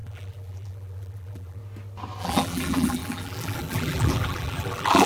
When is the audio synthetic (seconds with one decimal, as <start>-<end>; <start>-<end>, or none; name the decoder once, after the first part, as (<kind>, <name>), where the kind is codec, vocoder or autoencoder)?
0.0-1.6 (vocoder, BigVGAN v2); 2.2-5.1